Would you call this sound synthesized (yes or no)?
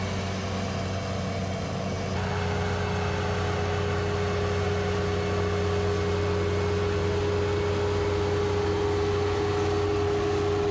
no